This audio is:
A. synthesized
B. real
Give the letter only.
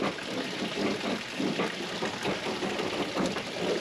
A